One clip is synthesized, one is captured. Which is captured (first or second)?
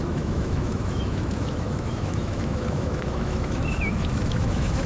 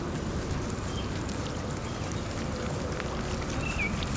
second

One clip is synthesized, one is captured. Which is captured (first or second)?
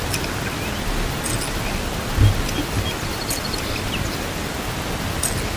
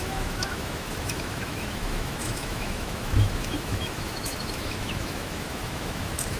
first